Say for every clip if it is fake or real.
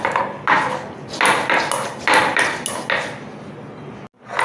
real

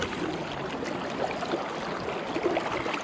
real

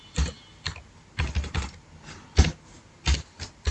real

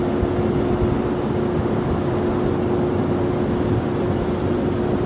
real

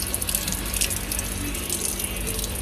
real